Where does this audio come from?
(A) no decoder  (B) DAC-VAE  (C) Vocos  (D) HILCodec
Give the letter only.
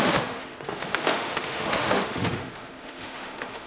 B